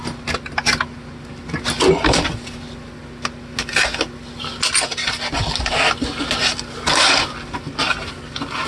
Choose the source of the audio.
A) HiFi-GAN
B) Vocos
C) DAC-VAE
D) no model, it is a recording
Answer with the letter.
D